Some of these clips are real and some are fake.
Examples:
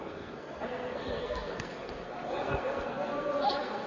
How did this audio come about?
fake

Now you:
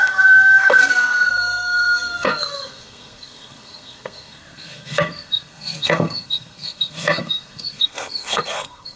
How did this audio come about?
fake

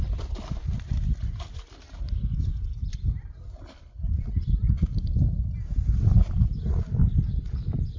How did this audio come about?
real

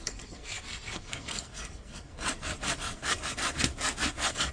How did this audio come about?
fake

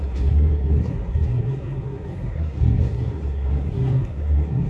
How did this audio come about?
fake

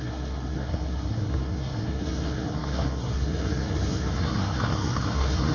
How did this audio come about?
fake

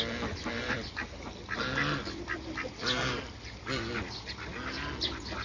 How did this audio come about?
real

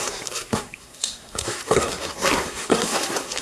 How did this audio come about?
fake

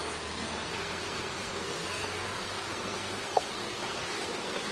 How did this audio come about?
fake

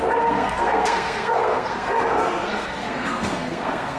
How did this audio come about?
fake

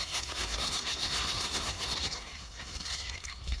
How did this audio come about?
fake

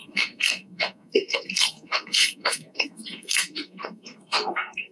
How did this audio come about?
fake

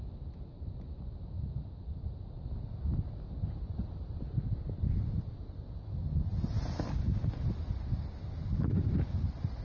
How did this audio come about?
real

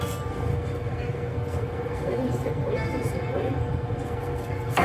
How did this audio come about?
fake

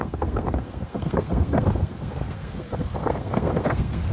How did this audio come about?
fake